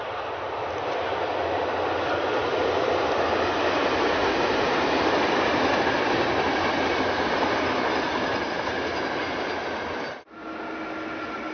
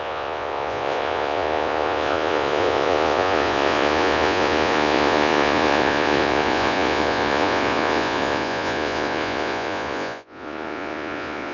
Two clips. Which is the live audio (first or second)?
first